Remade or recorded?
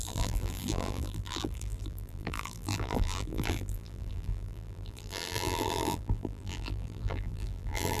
remade